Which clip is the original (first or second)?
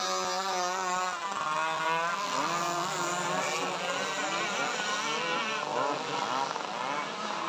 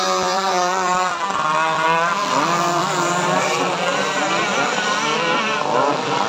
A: first